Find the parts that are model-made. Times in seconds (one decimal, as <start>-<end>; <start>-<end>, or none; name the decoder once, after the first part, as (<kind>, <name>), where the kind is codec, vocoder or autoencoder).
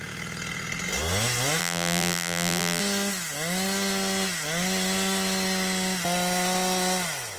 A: 1.6-2.8 (vocoder, BigVGAN v2)